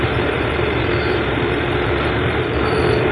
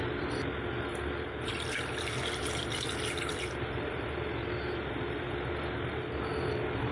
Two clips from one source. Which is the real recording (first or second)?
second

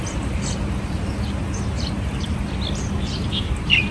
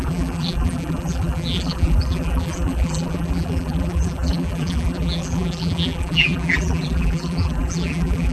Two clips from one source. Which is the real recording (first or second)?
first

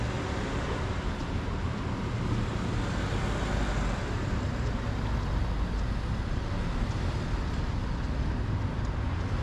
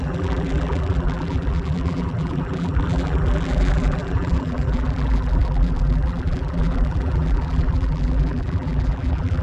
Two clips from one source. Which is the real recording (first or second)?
first